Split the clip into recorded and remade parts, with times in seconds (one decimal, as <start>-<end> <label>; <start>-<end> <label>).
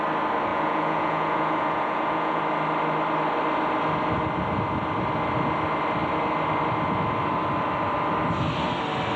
0.0-0.5 recorded; 0.5-2.4 remade; 2.4-9.2 recorded